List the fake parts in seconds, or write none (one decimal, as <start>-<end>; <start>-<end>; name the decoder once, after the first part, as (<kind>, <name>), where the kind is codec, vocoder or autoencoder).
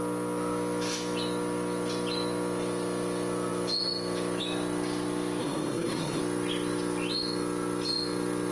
5.4-6.2 (codec, SNAC)